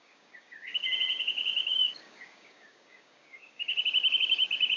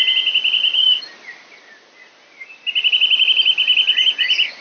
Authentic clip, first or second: second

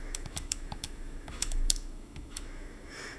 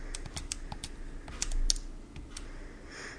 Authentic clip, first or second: second